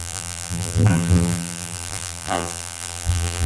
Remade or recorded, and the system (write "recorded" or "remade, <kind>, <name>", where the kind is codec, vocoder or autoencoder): remade, vocoder, BigVGAN v2